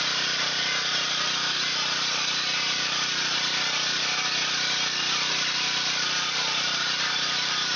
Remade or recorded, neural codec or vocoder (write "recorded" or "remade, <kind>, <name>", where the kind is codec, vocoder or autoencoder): remade, vocoder, BigVGAN v2